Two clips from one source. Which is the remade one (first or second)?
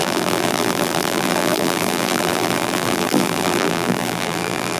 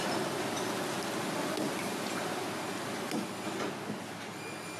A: first